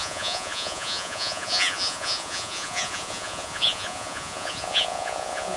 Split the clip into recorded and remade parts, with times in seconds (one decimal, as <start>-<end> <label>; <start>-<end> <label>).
0.0-5.6 remade

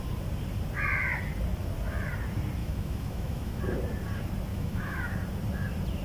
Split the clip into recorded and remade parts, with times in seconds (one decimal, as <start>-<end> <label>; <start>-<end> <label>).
0.0-2.6 recorded; 2.6-3.6 remade; 3.6-4.5 recorded; 4.5-5.1 remade; 5.1-6.0 recorded

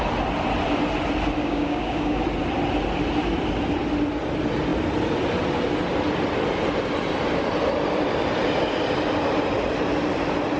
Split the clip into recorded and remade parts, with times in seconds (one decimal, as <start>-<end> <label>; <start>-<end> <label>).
0.0-1.4 recorded; 1.4-2.2 remade; 2.2-10.6 recorded